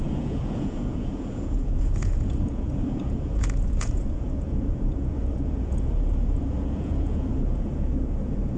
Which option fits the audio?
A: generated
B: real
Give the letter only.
A